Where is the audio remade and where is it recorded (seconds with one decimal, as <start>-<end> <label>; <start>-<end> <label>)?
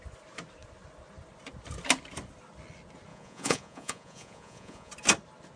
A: 0.0-3.1 recorded; 3.1-4.9 remade; 4.9-5.6 recorded